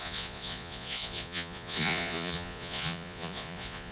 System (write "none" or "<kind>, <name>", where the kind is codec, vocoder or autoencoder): vocoder, Vocos